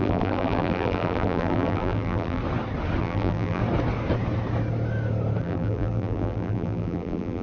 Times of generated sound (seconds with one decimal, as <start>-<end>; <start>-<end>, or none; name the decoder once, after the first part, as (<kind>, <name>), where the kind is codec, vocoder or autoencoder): 0.0-2.4 (vocoder, BigVGAN v2); 3.0-3.6; 5.4-7.4